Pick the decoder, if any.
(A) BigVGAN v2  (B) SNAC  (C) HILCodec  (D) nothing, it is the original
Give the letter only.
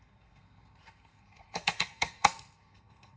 B